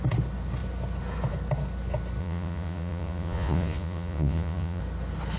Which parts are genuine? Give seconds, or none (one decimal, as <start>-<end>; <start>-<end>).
0.0-2.2; 4.8-5.4